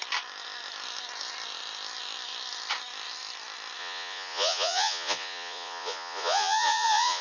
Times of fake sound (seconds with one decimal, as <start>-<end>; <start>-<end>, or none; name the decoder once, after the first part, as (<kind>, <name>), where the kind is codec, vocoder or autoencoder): 3.8-7.2 (vocoder, Vocos)